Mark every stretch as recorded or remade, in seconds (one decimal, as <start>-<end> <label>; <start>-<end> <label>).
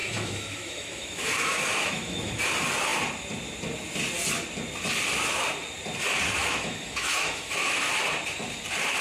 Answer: 0.0-2.4 remade; 2.4-6.4 recorded; 6.4-7.9 remade; 7.9-9.0 recorded